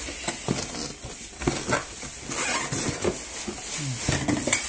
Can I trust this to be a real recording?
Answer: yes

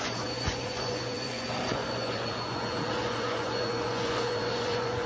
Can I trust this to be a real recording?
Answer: no